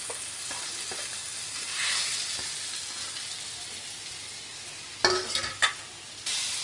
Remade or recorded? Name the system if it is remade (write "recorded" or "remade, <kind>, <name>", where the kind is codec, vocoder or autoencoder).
recorded